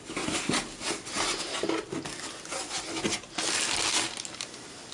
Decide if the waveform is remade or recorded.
recorded